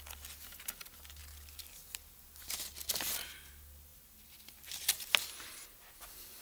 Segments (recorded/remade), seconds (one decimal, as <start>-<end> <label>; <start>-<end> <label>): 0.0-6.4 recorded